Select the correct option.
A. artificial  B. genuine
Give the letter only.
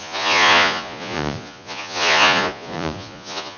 A